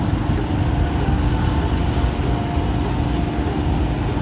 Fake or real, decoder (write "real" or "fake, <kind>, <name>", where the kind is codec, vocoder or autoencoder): real